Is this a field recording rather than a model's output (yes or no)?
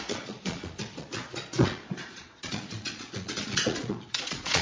no